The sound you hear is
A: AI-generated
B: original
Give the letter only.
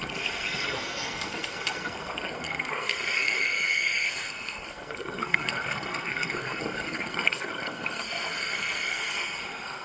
A